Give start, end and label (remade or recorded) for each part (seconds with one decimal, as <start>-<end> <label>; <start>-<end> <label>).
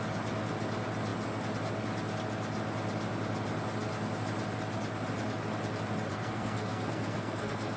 0.0-6.1 recorded; 6.1-7.8 remade